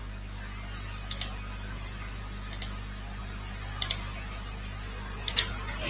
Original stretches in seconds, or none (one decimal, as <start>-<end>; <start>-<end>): 0.0-5.9